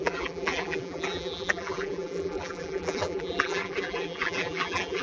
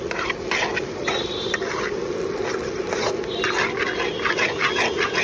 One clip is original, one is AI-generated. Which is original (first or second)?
second